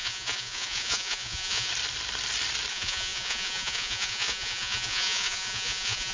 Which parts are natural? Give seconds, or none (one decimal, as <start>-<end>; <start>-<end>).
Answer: 1.7-2.7